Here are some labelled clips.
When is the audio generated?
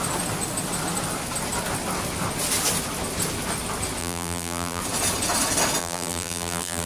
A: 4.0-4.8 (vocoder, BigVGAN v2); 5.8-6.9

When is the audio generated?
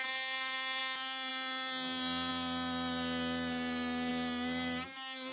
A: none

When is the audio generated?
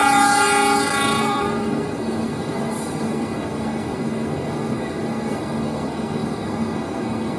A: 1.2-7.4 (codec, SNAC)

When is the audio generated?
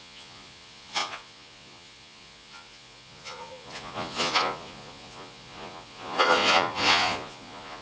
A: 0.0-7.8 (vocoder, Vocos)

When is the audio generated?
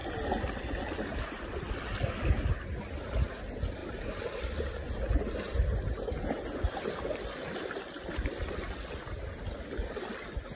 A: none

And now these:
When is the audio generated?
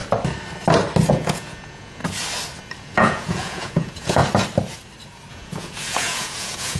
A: 1.1-2.0 (vocoder, Vocos); 2.8-4.2; 5.3-6.8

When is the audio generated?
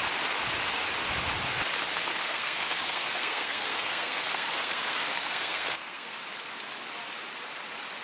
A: 2.1-6.2 (codec, SNAC)